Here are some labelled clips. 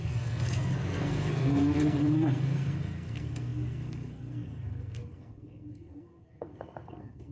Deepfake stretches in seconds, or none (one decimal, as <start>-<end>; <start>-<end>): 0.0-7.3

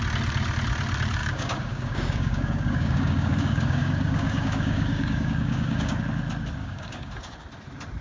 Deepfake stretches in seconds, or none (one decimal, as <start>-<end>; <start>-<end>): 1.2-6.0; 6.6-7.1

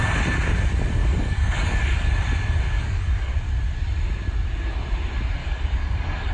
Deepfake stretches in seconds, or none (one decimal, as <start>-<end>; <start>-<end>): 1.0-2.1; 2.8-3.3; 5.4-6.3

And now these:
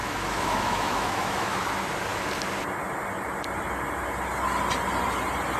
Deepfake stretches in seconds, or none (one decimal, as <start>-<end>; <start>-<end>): 0.0-1.7

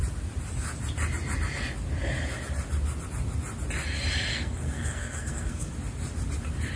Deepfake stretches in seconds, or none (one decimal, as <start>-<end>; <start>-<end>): 4.3-5.7

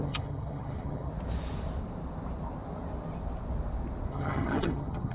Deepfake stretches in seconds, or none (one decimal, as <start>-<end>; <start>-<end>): 0.0-1.1; 4.1-5.1